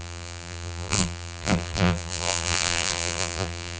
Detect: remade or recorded remade